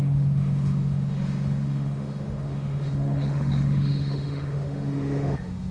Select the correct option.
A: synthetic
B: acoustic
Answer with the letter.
A